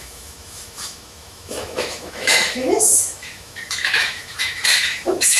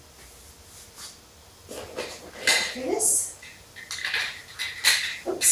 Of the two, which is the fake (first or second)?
first